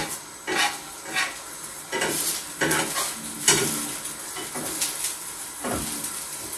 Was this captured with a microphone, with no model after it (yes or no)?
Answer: yes